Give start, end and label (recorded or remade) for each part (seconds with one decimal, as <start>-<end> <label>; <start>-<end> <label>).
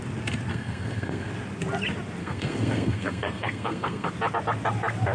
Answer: 0.0-0.5 recorded; 0.5-1.3 remade; 1.3-2.2 recorded; 2.2-4.1 remade; 4.1-5.1 recorded